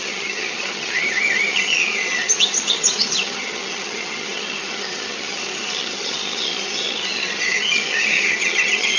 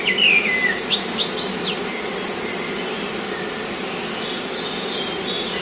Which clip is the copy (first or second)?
first